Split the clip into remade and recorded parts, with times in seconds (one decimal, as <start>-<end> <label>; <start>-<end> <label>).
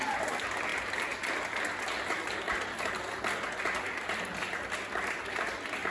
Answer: 0.0-5.9 recorded